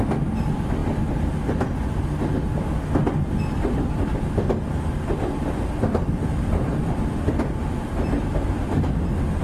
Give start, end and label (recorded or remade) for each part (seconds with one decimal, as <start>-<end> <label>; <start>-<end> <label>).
0.0-9.4 recorded